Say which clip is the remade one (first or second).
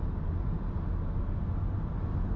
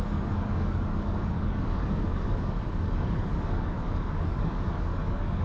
second